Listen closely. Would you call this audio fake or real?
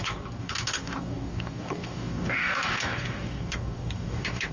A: fake